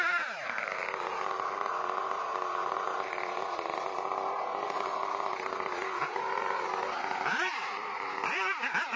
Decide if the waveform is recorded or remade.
recorded